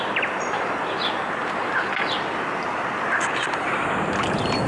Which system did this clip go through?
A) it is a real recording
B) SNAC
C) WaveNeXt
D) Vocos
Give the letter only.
A